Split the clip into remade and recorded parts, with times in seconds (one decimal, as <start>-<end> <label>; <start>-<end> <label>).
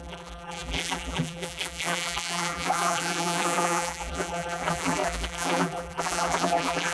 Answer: 0.0-6.9 remade